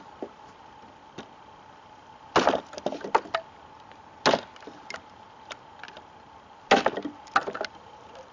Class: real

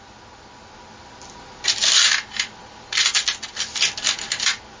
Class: real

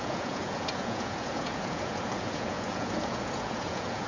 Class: fake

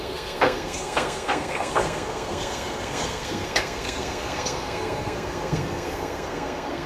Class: fake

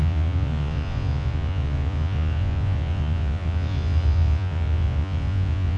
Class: fake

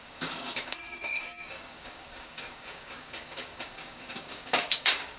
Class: fake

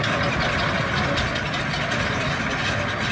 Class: real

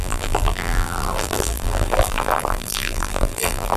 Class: fake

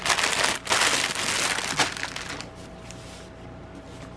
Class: real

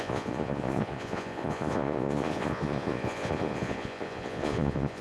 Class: fake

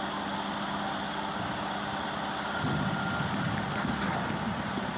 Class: real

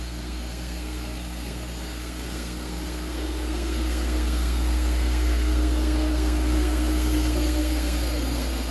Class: fake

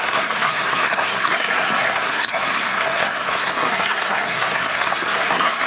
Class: fake